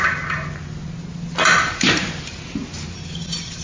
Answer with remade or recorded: recorded